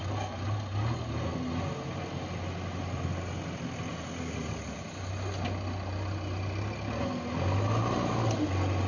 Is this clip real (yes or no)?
yes